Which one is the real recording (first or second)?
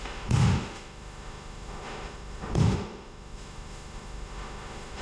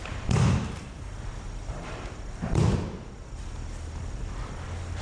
second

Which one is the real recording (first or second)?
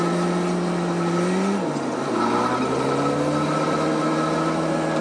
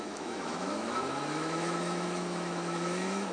first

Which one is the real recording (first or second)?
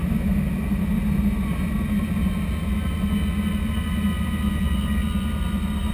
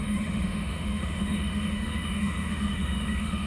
first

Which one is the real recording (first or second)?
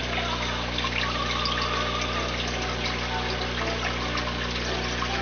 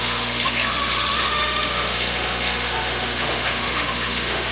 first